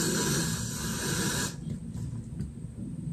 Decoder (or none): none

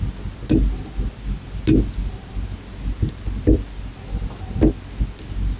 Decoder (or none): none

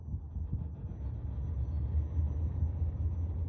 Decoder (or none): none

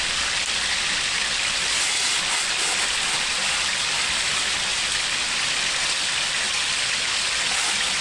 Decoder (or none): none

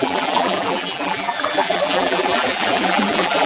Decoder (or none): vocoder, BigVGAN v2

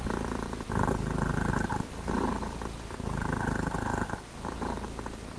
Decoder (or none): none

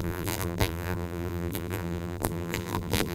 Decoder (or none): vocoder, BigVGAN v2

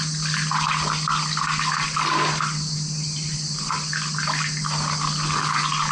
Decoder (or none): none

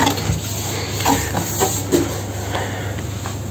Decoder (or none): none